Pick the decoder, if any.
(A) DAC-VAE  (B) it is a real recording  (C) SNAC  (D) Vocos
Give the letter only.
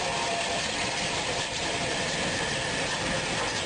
B